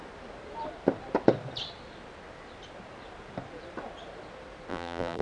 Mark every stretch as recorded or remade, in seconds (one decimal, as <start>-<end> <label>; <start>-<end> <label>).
0.0-4.7 recorded; 4.7-5.2 remade